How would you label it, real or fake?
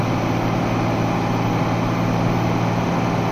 real